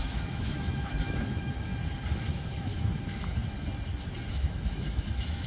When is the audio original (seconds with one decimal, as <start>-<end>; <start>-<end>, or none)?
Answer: 1.7-2.3; 3.4-4.3